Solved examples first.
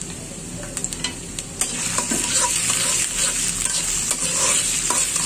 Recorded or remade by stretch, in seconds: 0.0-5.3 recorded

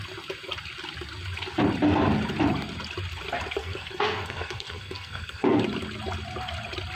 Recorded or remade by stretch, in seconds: 0.0-3.6 recorded; 3.6-5.6 remade; 5.6-7.0 recorded